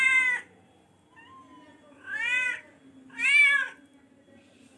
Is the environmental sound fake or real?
real